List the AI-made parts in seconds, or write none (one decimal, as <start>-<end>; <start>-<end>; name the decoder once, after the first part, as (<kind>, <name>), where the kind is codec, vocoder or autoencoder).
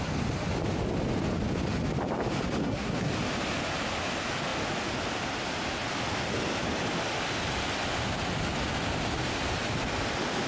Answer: 2.6-3.1 (codec, SNAC)